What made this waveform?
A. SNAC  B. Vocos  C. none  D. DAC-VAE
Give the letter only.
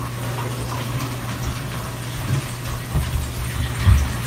C